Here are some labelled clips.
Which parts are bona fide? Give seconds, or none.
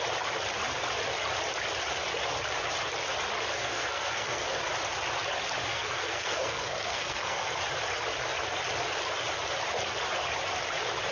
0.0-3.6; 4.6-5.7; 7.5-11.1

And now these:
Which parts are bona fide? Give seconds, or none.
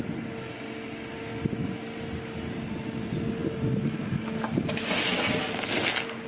0.0-6.3